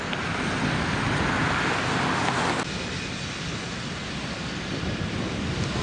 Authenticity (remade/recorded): recorded